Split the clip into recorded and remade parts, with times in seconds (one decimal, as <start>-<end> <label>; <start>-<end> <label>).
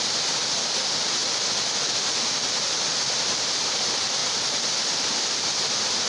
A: 0.0-6.1 recorded